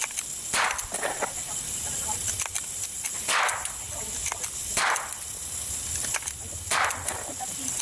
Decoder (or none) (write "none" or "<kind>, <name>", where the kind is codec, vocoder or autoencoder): none